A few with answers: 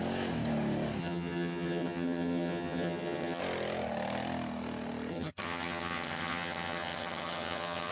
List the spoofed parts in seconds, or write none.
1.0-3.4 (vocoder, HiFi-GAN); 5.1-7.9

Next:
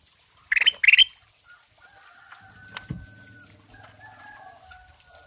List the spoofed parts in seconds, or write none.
none